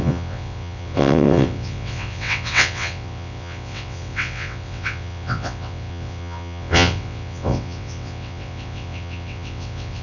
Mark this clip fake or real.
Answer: fake